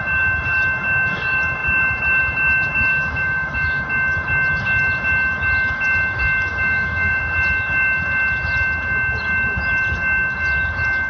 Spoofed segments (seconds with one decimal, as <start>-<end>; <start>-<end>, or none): 2.9-3.8; 6.5-7.2